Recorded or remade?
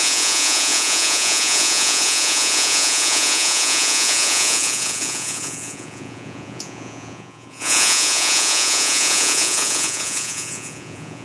remade